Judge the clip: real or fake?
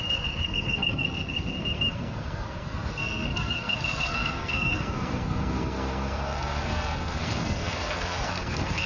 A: fake